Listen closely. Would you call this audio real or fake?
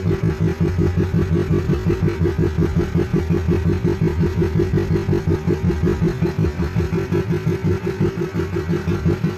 real